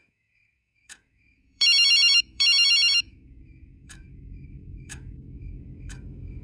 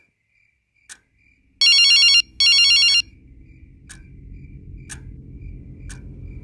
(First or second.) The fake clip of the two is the first